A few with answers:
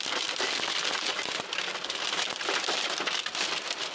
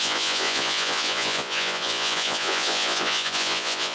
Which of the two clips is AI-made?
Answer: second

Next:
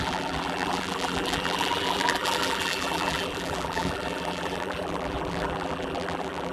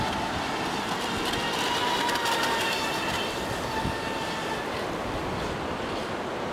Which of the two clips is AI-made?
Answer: first